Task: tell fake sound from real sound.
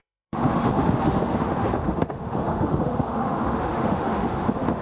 fake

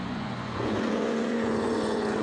fake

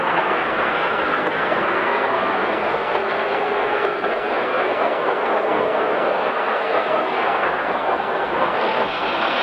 fake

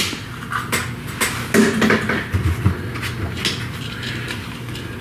real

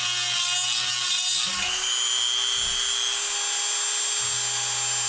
real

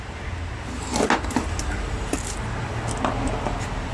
real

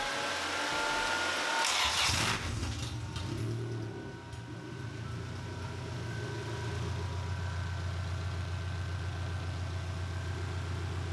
real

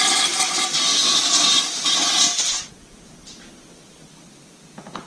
real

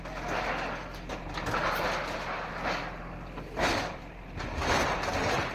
real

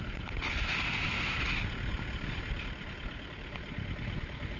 real